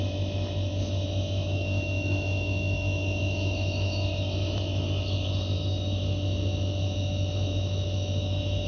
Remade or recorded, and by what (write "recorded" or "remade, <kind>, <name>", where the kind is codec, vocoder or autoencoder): remade, autoencoder, DAC-VAE